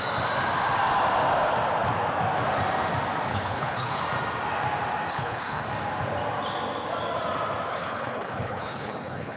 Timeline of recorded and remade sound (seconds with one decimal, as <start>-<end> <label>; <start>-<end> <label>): 0.0-3.3 recorded; 3.3-4.0 remade; 4.0-5.1 recorded; 5.1-5.6 remade; 5.6-7.7 recorded; 7.7-9.4 remade